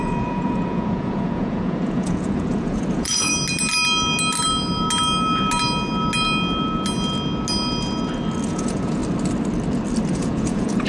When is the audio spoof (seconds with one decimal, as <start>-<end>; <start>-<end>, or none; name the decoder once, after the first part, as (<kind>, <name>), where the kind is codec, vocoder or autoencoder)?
0.0-3.3 (vocoder, Vocos); 8.5-9.0; 10.1-10.9